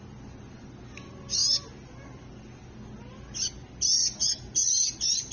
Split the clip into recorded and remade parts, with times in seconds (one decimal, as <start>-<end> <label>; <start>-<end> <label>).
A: 0.0-5.3 recorded